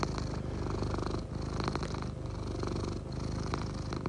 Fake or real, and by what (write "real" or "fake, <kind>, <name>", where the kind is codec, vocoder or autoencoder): real